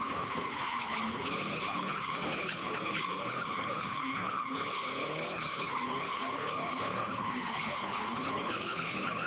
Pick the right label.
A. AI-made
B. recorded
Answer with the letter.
A